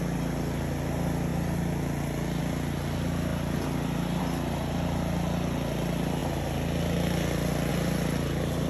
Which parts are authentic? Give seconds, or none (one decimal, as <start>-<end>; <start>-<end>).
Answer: 0.0-8.7

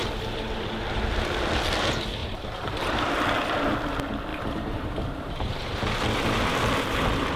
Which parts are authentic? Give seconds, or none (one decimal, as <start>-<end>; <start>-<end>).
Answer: 0.7-2.2; 2.9-4.3; 6.6-7.4

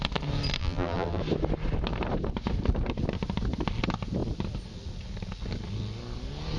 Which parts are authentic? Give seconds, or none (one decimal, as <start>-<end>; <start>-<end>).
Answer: 0.0-0.6; 1.2-6.6

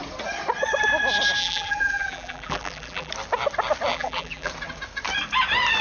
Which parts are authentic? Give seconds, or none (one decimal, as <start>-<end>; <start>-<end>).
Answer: 0.0-1.4; 3.1-3.9; 4.5-5.8

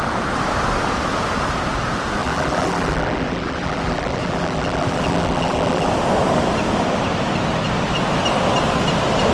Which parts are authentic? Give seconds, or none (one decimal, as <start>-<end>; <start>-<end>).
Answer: 0.0-2.2; 5.9-9.3

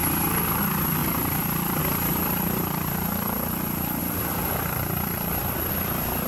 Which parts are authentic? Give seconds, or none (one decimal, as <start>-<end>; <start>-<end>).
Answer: 0.6-1.0; 1.8-4.0; 5.7-6.3